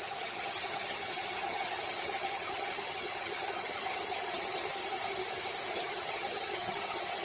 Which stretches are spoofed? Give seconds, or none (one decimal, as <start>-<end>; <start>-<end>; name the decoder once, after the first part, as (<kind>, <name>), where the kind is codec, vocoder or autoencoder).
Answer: 0.0-4.8 (vocoder, HiFi-GAN); 5.7-7.2